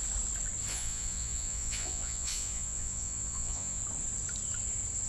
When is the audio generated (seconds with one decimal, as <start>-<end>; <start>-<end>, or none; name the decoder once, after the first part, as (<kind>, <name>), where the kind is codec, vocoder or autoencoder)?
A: 0.7-3.8 (vocoder, Vocos)